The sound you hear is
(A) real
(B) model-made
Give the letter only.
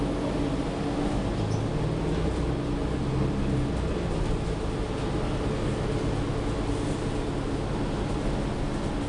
A